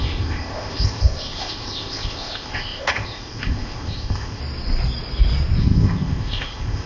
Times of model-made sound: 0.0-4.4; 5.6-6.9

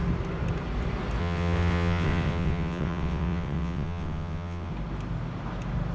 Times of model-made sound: 1.2-4.7

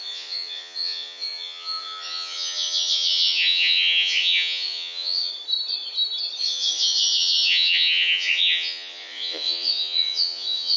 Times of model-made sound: 0.0-5.3; 6.4-10.8

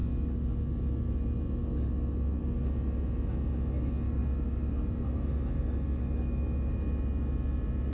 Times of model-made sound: none

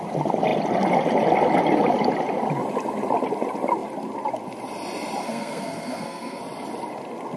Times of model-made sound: 5.2-6.4